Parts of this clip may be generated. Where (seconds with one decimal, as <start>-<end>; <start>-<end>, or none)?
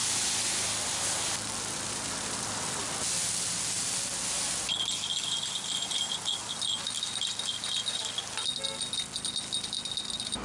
none